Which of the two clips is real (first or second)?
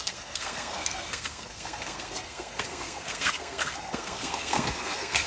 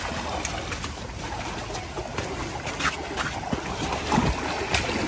second